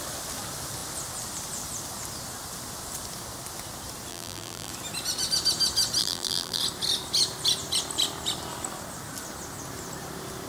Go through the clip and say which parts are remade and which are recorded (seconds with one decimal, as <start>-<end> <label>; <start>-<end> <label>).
0.0-4.1 recorded; 4.1-4.7 remade; 4.7-6.0 recorded; 6.0-6.6 remade; 6.6-10.5 recorded